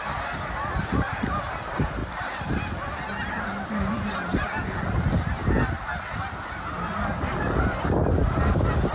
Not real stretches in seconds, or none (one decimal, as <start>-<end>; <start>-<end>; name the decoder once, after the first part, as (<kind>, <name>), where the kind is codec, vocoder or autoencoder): none